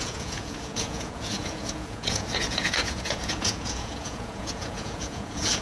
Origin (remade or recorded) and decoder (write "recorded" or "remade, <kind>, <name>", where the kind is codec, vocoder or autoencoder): remade, vocoder, Vocos